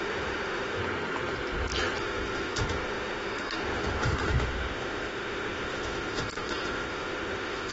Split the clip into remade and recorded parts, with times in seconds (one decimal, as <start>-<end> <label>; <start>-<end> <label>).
0.0-0.8 remade; 0.8-2.0 recorded; 2.0-7.7 remade